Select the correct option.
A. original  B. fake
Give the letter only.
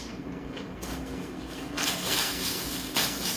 B